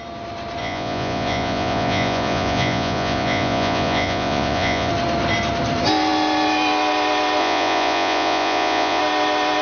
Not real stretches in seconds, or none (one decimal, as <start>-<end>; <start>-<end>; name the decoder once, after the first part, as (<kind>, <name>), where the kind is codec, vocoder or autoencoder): 0.6-4.9 (vocoder, Vocos); 7.4-9.0